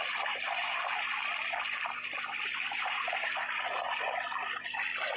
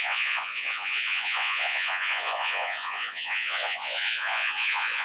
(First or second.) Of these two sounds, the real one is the first